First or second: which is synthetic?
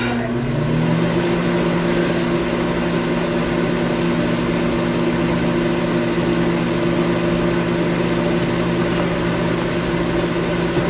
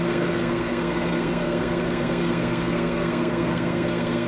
second